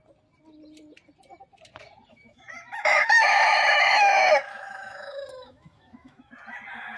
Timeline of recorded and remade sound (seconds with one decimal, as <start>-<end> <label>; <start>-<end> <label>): 0.0-2.1 recorded; 2.1-6.3 remade; 6.3-7.0 recorded